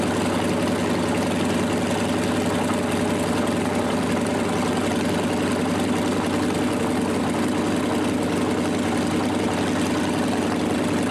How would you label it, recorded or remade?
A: recorded